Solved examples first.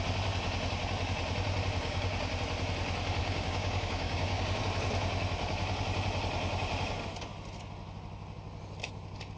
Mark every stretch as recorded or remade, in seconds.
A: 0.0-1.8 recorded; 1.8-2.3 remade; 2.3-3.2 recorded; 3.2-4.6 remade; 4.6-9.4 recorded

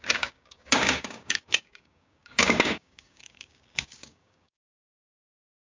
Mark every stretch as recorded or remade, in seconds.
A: 0.0-5.6 remade

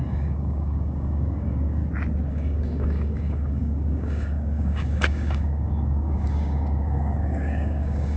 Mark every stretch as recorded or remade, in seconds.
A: 0.0-1.8 remade; 1.8-2.3 recorded; 2.3-8.2 remade

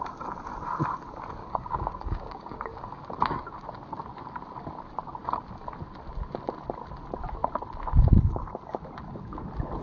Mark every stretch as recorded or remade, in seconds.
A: 0.0-1.4 recorded; 1.4-3.0 remade; 3.0-9.8 recorded

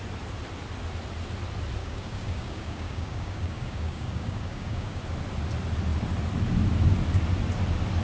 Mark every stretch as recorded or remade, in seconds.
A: 0.0-1.8 recorded; 1.8-5.0 remade; 5.0-8.0 recorded

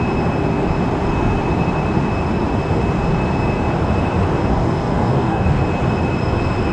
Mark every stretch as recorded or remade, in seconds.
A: 0.0-4.5 recorded; 4.5-5.6 remade; 5.6-6.7 recorded